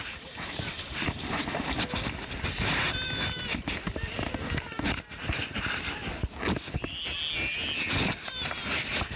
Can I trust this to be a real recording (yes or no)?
yes